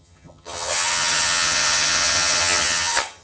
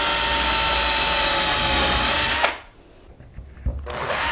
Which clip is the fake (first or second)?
first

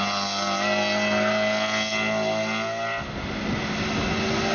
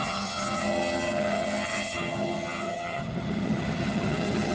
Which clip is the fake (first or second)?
second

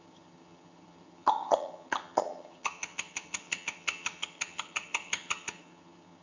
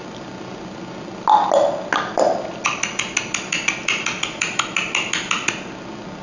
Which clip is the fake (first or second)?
first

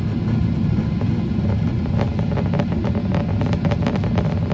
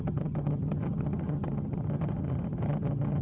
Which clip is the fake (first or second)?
second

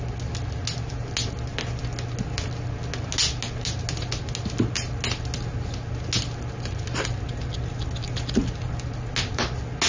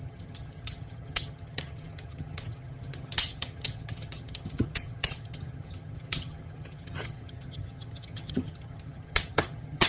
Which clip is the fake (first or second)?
second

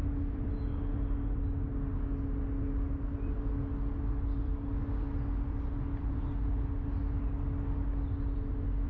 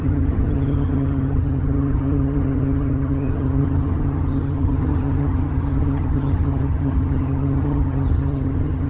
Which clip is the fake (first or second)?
second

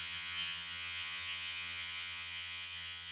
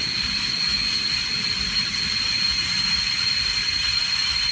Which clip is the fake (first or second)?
first